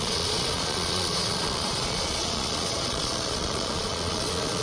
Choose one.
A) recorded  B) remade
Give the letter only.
B